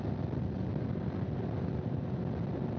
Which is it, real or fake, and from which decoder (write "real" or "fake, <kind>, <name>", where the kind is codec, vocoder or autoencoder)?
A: real